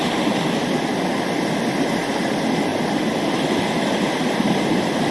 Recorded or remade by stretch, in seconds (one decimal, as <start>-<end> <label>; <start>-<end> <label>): 0.0-5.1 recorded